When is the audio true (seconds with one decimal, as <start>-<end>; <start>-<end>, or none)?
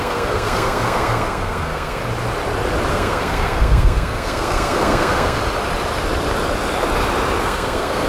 2.0-2.9; 5.4-7.4